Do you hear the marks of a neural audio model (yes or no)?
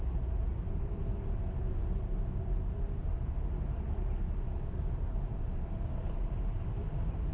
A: no